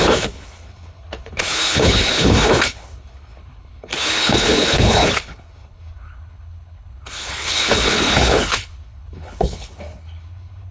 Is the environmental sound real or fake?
fake